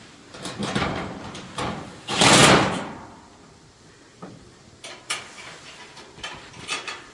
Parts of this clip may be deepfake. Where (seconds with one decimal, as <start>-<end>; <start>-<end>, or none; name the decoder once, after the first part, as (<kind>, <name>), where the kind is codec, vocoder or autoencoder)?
0.6-1.6 (vocoder, BigVGAN v2)